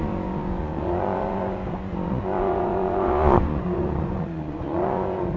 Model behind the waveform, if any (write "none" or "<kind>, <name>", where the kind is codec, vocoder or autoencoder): vocoder, Vocos